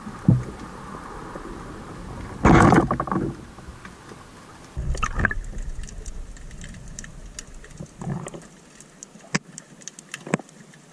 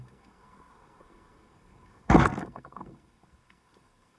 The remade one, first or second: second